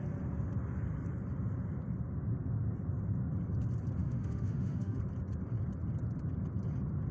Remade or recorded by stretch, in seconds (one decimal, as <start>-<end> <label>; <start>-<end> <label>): 0.0-4.0 recorded; 4.0-5.0 remade; 5.0-7.1 recorded